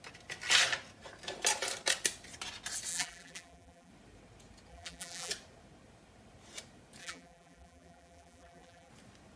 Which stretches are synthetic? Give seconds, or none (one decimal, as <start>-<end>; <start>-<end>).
2.9-3.9; 4.7-5.3; 7.0-8.9